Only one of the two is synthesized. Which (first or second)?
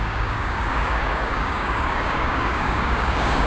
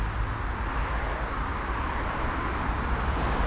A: first